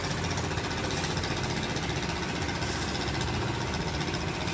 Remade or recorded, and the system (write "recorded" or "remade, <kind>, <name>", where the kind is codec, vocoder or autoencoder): recorded